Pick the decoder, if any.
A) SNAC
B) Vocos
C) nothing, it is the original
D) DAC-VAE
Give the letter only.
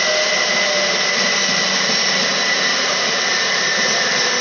C